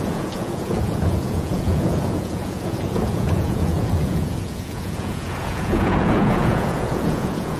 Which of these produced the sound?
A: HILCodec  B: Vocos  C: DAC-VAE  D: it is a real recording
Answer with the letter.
B